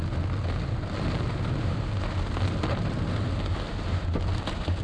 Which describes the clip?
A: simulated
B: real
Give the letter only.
B